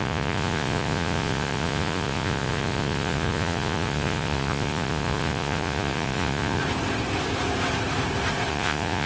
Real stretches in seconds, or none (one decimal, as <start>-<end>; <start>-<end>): 6.6-8.5